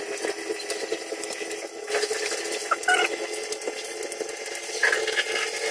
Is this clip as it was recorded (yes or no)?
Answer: yes